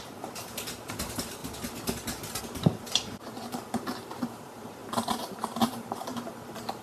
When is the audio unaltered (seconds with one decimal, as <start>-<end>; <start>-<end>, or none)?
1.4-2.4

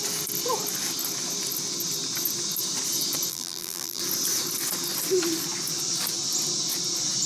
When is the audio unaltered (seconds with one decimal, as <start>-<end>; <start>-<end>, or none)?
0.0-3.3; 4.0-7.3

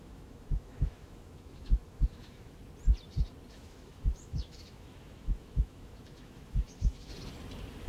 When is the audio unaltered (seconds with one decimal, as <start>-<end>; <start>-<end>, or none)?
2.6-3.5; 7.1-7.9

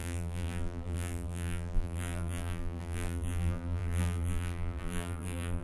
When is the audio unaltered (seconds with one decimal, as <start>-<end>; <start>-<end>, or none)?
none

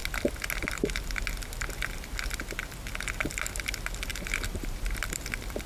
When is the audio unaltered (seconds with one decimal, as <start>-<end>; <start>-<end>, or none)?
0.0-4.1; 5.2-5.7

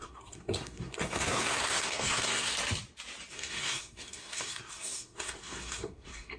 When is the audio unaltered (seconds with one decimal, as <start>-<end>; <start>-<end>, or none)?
2.5-3.3